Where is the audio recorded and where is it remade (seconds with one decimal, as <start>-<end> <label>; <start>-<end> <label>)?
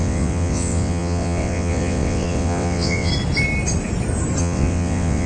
0.0-3.1 remade; 3.1-4.4 recorded; 4.4-5.3 remade